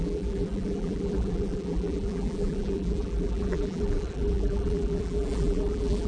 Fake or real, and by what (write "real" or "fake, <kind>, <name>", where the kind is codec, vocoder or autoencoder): fake, vocoder, BigVGAN v2